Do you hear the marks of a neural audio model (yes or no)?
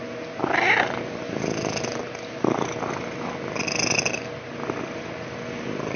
no